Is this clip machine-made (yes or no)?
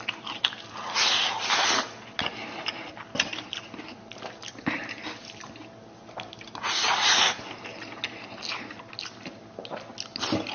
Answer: no